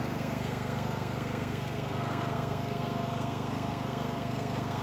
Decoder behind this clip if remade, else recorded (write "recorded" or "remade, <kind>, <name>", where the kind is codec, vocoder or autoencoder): remade, codec, SNAC